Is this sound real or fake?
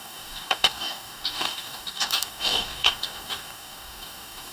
fake